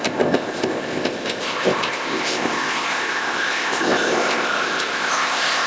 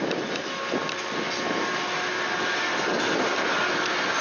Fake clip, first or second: first